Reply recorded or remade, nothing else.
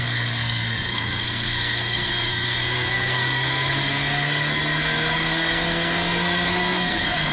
remade